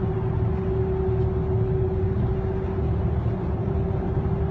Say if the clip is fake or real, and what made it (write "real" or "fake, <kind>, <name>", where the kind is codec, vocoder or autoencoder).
real